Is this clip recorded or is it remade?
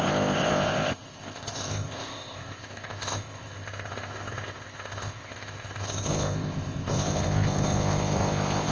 remade